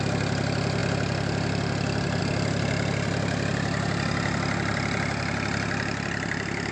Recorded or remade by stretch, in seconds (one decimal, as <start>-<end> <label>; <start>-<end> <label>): 0.0-6.7 recorded

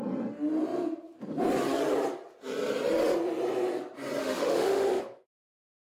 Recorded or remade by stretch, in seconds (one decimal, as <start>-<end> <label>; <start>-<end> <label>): 0.0-4.2 recorded; 4.2-5.0 remade; 5.0-6.0 recorded

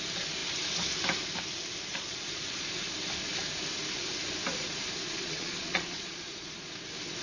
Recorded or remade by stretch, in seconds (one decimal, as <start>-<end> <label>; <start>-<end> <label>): 0.0-1.9 recorded; 1.9-2.7 remade; 2.7-5.0 recorded; 5.0-6.7 remade; 6.7-7.2 recorded

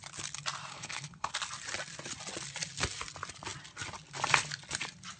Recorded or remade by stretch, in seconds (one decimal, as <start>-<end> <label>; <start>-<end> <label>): 0.0-0.7 recorded; 0.7-1.3 remade; 1.3-5.2 recorded